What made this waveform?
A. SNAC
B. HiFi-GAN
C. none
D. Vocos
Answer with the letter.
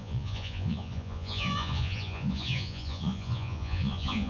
D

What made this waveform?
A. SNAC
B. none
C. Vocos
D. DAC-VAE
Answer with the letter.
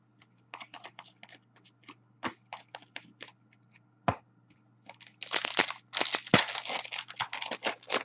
B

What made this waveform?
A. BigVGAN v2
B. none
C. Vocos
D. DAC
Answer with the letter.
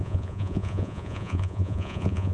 C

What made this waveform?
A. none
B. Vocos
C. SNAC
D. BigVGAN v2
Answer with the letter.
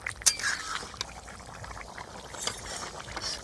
A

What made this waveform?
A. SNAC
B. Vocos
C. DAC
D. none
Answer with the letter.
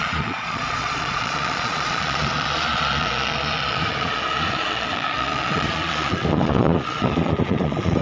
B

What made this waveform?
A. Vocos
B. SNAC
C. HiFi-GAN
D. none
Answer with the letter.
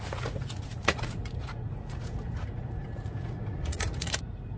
A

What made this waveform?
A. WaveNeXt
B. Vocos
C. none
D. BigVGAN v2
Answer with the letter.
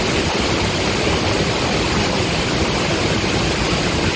C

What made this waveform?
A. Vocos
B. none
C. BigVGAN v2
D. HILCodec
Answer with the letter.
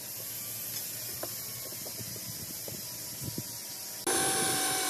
B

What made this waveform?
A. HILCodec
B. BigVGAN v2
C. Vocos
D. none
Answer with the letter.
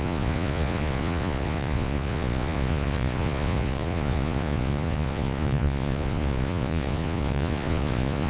C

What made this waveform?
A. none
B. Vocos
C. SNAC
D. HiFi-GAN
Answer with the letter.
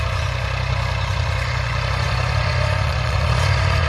B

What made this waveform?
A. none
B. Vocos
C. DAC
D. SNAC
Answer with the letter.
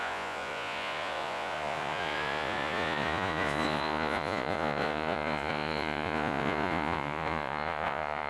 B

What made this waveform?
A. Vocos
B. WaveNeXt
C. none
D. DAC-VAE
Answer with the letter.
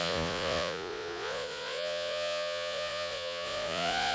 A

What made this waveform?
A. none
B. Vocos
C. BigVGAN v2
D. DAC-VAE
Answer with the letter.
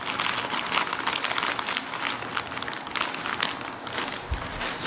A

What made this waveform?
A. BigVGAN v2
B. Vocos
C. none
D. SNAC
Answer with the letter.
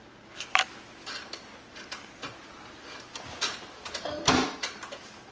C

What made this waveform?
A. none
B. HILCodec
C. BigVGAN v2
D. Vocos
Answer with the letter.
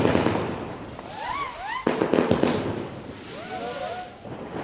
A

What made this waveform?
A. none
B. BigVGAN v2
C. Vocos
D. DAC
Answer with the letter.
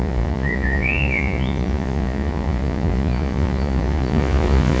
C